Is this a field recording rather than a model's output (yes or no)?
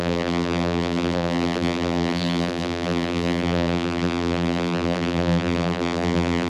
no